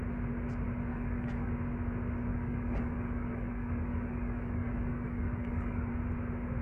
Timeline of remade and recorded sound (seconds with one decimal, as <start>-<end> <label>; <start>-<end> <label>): 0.0-0.9 recorded; 0.9-1.5 remade; 1.5-2.3 recorded; 2.3-5.9 remade; 5.9-6.6 recorded